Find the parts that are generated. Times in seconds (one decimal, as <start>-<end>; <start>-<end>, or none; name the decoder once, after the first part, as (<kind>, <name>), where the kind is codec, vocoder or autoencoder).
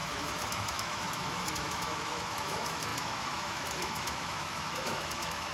0.0-5.5 (autoencoder, DAC-VAE)